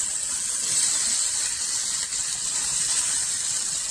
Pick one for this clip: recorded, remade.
recorded